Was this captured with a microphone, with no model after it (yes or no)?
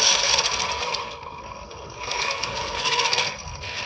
no